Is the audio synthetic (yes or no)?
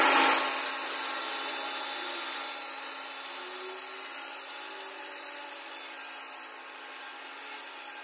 no